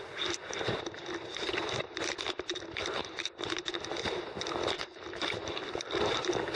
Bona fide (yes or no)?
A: yes